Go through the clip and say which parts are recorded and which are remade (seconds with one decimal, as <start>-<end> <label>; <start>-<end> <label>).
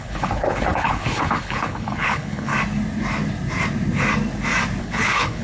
0.0-2.5 remade; 2.5-4.8 recorded; 4.8-5.4 remade